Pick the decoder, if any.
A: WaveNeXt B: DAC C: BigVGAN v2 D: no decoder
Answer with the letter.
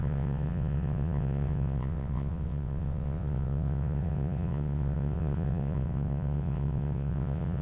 A